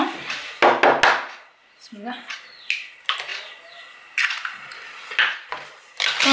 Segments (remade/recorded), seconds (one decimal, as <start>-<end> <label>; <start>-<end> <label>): 0.0-6.3 recorded